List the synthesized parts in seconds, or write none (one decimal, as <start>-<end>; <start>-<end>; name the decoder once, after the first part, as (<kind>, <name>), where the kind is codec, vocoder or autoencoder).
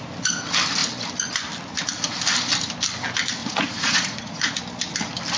3.4-4.6 (vocoder, Vocos)